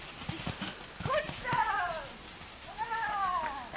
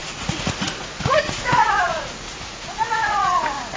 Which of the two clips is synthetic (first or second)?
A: second